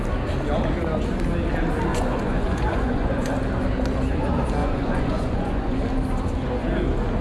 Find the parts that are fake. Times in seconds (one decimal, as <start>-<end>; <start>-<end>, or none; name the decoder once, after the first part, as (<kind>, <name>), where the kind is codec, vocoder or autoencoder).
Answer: 1.9-3.3 (vocoder, Vocos); 4.6-5.8